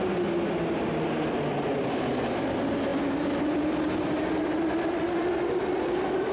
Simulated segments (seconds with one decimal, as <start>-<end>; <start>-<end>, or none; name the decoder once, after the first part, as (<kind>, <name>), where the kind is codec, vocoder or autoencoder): none